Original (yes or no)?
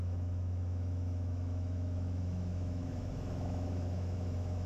no